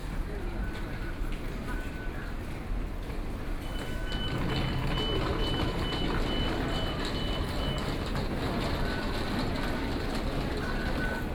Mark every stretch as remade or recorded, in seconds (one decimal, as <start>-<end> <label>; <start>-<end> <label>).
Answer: 0.0-3.7 recorded; 3.7-4.4 remade; 4.4-5.3 recorded; 5.3-10.1 remade; 10.1-11.3 recorded